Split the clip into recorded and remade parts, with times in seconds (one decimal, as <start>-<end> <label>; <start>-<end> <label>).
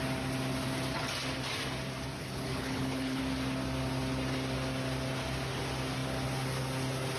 0.0-2.2 recorded; 2.2-3.2 remade; 3.2-7.2 recorded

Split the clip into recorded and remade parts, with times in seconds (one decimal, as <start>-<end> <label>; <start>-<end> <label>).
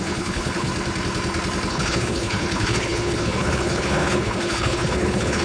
0.0-0.7 remade; 0.7-1.7 recorded; 1.7-5.4 remade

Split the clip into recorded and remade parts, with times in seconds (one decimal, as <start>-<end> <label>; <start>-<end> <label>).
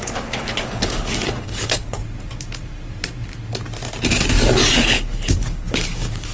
0.0-2.0 remade; 2.0-4.7 recorded; 4.7-6.3 remade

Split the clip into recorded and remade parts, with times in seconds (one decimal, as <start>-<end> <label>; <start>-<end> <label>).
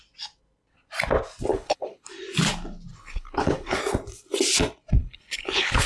0.0-1.5 recorded; 1.5-2.1 remade; 2.1-2.9 recorded; 2.9-3.8 remade; 3.8-5.0 recorded; 5.0-5.9 remade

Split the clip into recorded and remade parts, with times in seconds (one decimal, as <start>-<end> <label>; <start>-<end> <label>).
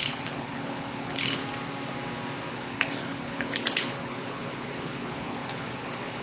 0.0-1.4 remade; 1.4-2.5 recorded; 2.5-6.2 remade